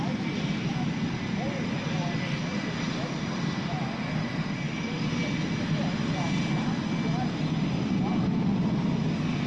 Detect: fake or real real